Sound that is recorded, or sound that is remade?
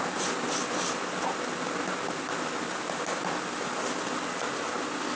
recorded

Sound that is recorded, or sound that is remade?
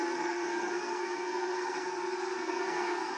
remade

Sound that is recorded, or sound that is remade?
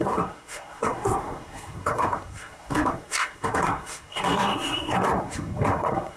remade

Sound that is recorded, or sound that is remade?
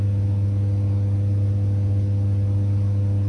recorded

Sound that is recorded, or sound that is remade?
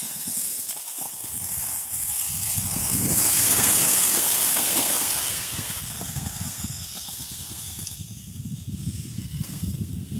remade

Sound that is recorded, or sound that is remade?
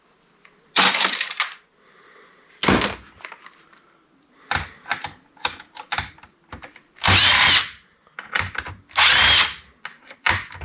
recorded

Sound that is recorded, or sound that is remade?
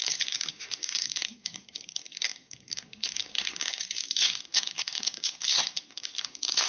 remade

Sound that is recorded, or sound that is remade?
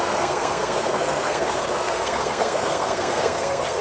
remade